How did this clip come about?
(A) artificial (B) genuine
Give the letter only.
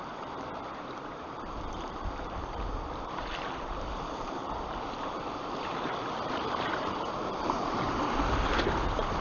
A